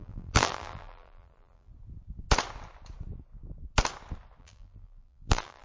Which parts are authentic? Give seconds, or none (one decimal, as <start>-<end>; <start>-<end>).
1.7-4.4